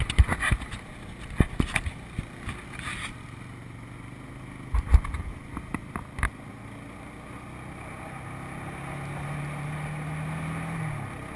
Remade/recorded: recorded